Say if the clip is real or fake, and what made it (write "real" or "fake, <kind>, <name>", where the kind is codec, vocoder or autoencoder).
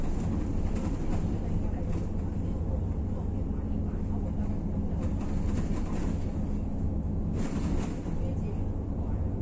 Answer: real